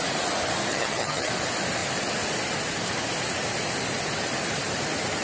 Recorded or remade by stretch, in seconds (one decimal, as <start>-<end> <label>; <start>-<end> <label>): 0.0-0.7 recorded; 0.7-1.3 remade; 1.3-5.2 recorded